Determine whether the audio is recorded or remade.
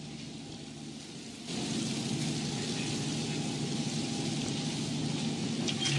recorded